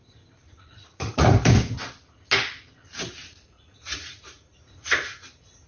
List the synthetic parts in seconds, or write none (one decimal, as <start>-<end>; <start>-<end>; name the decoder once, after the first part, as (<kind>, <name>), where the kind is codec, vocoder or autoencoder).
0.4-1.3 (vocoder, Vocos); 3.2-5.3